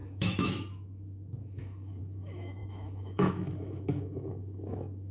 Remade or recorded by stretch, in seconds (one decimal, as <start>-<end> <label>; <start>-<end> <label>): 0.0-5.1 remade